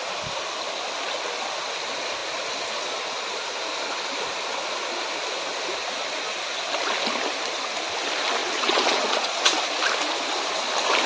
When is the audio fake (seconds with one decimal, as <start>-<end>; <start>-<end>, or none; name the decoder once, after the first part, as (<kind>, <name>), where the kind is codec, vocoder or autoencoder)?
8.4-9.6 (vocoder, Vocos)